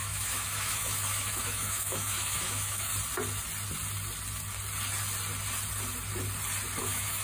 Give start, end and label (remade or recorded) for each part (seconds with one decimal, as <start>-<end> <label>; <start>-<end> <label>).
0.0-2.9 remade; 2.9-6.8 recorded; 6.8-7.2 remade